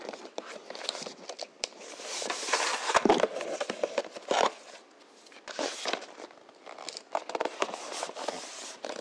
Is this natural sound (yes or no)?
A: no